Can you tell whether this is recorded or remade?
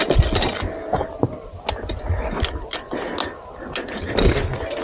recorded